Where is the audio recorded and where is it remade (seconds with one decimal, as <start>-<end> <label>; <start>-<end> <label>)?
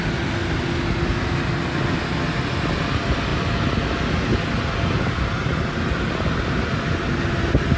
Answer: 0.0-7.8 recorded